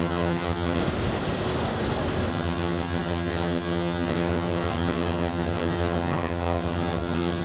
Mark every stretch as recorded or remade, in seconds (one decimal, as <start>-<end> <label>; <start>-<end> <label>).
0.0-0.8 remade; 0.8-2.3 recorded; 2.3-7.4 remade